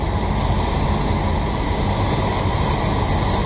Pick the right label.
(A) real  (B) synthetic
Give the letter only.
A